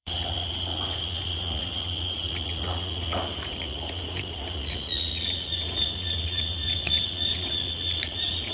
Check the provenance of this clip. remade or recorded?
remade